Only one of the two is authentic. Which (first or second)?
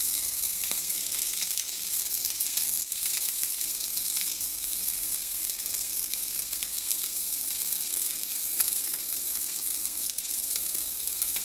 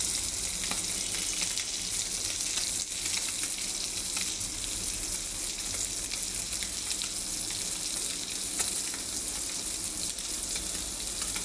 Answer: second